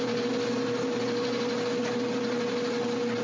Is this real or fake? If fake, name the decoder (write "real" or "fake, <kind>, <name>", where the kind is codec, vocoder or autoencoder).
real